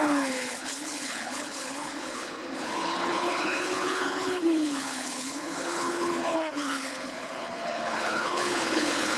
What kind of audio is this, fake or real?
fake